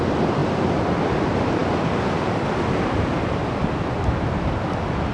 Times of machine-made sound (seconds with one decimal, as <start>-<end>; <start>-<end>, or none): none